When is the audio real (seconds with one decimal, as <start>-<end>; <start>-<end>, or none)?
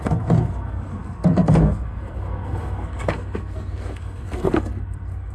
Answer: none